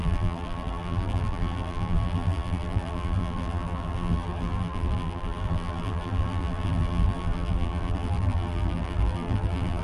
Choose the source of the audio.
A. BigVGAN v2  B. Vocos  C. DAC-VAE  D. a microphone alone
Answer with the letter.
A